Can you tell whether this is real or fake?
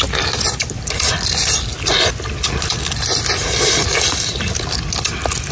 real